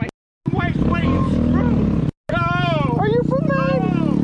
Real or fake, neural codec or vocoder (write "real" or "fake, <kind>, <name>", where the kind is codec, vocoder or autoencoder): real